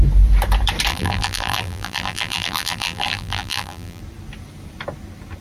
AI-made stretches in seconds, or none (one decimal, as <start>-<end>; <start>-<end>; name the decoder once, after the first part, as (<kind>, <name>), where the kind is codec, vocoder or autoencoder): 0.9-4.0 (vocoder, BigVGAN v2)